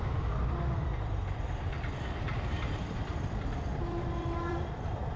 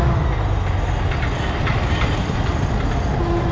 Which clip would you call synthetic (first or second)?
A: first